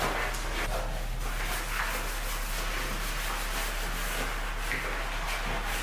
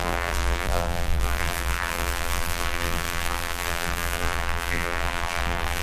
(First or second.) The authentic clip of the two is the first